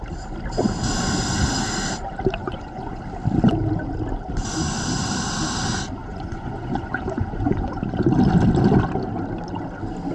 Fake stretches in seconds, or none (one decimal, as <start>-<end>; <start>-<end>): 2.4-3.0; 6.0-7.8